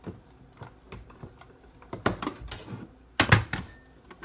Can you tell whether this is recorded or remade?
recorded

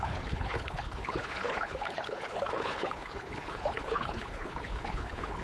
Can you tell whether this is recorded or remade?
remade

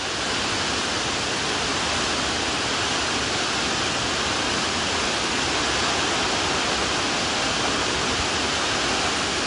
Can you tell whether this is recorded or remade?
recorded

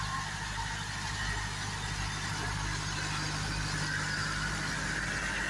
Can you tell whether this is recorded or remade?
recorded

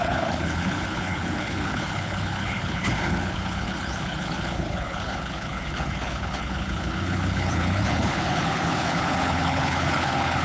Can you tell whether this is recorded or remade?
remade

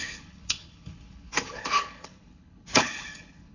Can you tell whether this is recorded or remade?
remade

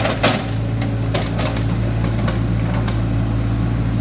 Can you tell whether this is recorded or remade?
recorded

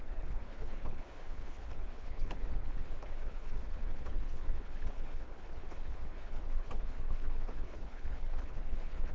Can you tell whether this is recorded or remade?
remade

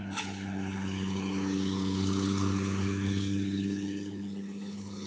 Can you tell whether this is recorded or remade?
remade